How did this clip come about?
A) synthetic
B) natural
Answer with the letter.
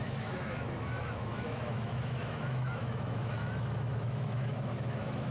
A